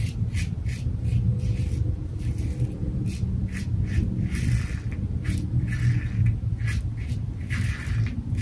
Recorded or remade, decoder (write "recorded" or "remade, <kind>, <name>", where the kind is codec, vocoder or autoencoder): remade, vocoder, BigVGAN v2